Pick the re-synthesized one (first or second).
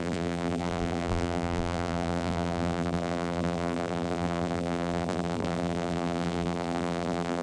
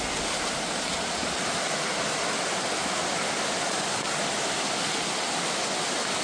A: first